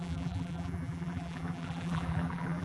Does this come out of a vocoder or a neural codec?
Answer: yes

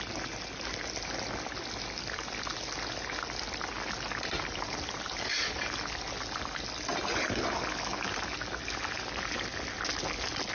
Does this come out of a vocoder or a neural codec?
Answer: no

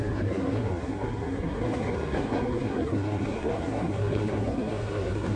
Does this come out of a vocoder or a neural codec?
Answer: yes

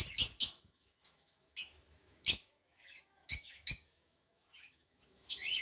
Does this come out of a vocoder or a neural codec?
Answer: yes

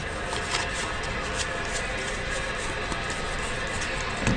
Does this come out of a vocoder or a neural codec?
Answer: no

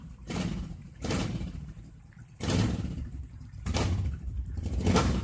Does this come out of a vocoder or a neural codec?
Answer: yes